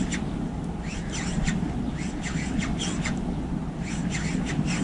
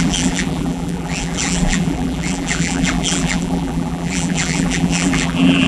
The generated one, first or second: second